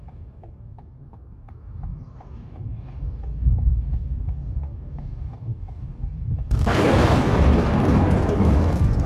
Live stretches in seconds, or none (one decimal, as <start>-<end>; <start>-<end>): none